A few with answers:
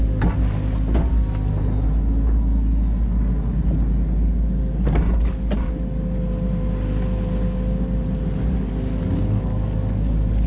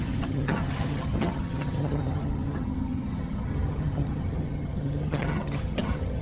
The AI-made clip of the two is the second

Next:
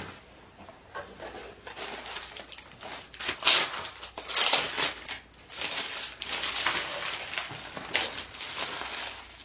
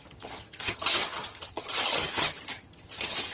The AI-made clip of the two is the second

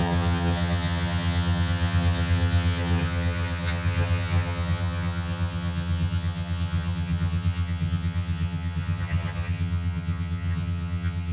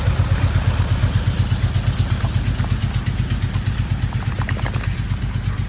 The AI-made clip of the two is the first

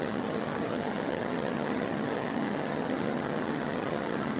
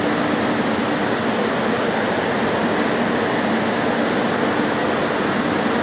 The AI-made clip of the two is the first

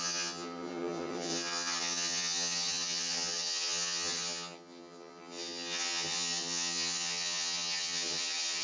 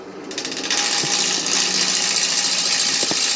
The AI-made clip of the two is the first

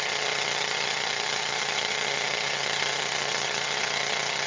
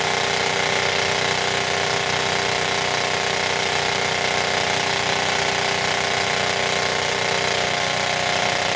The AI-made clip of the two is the first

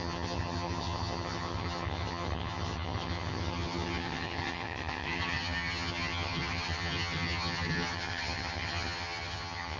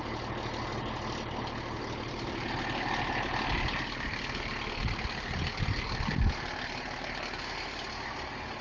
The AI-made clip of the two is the first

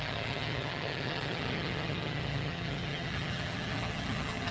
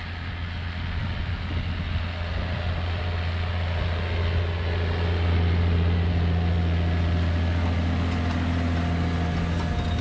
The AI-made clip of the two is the first